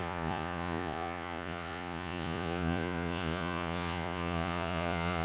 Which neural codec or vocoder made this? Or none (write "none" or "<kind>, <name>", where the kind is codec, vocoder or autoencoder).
vocoder, Vocos